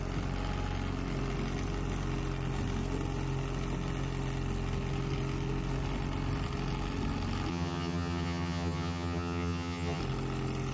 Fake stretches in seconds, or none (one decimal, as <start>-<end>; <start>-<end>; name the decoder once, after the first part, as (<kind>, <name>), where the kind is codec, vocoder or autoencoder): 7.5-10.0 (vocoder, HiFi-GAN)